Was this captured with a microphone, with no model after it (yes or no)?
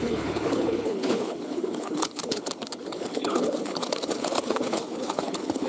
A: no